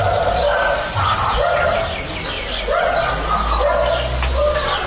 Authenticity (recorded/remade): recorded